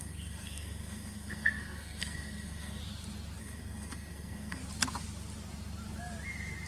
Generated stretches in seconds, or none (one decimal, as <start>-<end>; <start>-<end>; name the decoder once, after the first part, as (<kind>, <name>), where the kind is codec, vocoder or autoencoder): 0.0-2.8 (codec, SNAC); 3.4-4.6